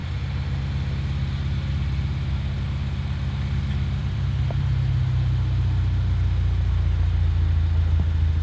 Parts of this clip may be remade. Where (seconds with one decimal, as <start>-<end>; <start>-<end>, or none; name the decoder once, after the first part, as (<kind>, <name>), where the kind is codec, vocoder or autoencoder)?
4.0-4.9 (vocoder, BigVGAN v2)